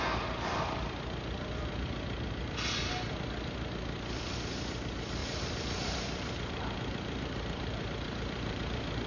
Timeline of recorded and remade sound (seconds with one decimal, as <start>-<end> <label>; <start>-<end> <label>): 0.0-5.2 recorded; 5.2-9.1 remade